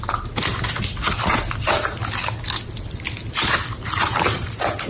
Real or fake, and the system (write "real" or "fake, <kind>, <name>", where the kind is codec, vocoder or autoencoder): real